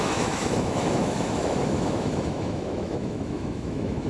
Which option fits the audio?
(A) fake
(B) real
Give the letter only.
A